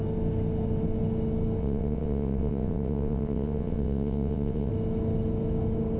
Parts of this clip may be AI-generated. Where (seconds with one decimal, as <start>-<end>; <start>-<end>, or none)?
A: 1.6-4.7